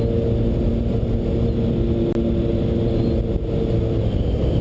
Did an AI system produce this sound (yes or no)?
no